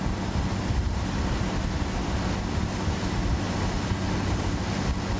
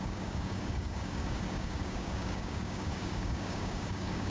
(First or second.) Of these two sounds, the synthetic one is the second